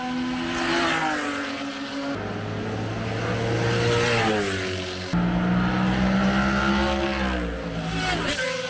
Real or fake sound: real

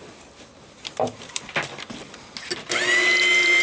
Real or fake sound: real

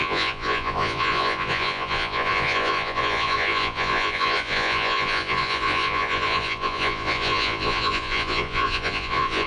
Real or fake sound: fake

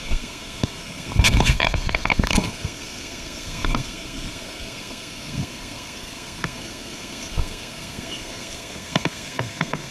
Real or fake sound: fake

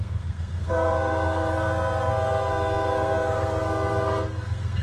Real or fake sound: fake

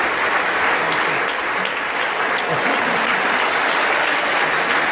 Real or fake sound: real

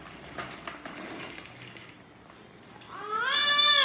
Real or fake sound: real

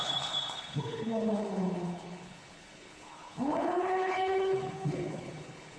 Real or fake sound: fake